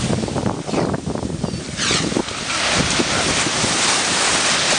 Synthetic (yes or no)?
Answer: no